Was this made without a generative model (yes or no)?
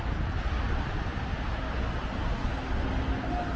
yes